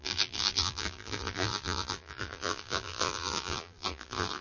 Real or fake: fake